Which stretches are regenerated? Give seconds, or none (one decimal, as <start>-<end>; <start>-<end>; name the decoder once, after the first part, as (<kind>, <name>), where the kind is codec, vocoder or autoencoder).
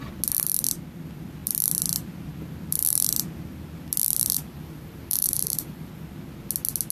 4.3-5.9 (vocoder, BigVGAN v2)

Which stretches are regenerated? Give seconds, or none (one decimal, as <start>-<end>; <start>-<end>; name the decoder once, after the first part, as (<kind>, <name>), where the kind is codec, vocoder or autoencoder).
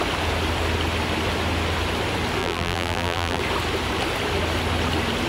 2.4-3.4 (vocoder, BigVGAN v2)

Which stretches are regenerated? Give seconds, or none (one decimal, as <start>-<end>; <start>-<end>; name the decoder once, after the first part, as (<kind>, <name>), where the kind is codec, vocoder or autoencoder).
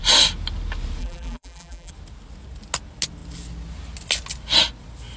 1.0-1.9 (vocoder, BigVGAN v2)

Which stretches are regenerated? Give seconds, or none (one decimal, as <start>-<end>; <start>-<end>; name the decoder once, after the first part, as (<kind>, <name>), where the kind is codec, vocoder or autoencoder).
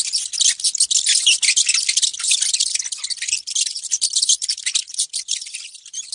2.1-6.1 (vocoder, BigVGAN v2)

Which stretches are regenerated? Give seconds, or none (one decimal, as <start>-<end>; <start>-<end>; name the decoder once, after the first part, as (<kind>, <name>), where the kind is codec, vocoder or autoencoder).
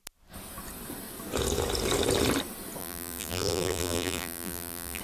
2.8-5.0 (vocoder, BigVGAN v2)